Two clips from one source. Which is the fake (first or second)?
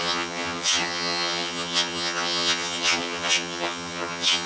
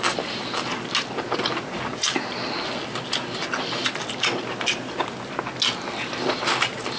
first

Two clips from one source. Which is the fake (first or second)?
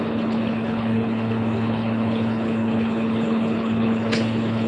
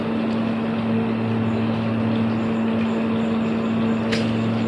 first